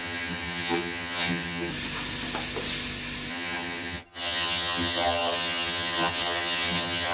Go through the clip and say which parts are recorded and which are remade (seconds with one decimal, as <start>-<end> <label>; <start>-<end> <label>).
0.0-1.7 remade; 1.7-3.3 recorded; 3.3-7.1 remade